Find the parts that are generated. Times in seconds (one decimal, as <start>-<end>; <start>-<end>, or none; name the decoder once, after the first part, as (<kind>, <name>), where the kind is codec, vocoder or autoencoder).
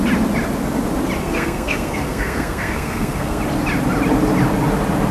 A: 1.2-3.4 (codec, SNAC)